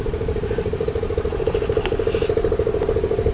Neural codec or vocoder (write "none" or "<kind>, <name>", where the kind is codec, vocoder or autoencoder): none